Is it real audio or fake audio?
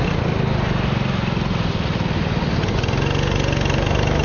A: real